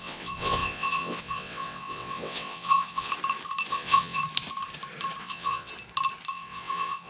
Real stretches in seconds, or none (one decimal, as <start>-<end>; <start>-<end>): 3.1-3.7; 4.2-5.2; 5.7-6.3

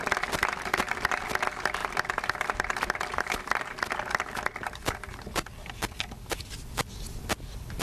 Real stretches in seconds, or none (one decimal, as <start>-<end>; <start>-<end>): 0.0-7.8

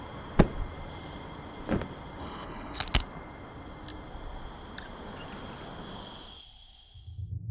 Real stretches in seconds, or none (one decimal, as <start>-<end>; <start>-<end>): 0.0-2.2; 2.8-7.5

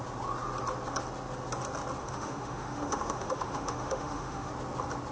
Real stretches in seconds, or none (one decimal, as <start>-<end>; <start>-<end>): 0.0-2.0; 4.5-5.1